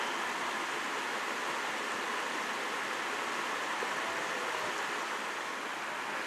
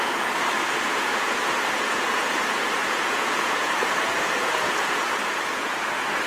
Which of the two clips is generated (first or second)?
second